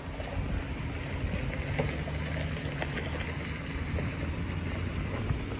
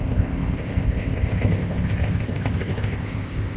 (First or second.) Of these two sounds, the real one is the first